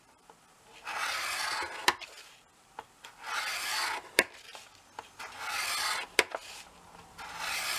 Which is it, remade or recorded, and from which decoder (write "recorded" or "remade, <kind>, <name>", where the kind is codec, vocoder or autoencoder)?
recorded